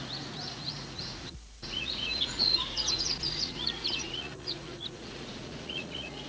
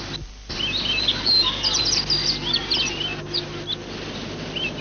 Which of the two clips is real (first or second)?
second